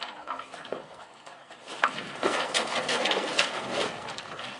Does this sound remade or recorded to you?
remade